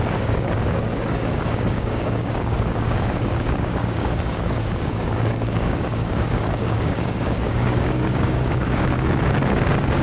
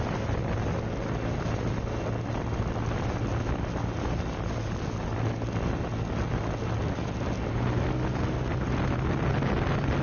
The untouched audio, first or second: second